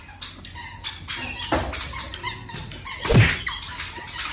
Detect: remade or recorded recorded